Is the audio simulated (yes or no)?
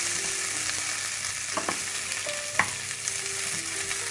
no